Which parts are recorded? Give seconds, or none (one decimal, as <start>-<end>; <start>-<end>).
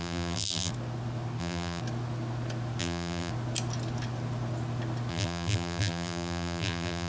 0.7-1.4; 1.8-2.8; 3.3-5.1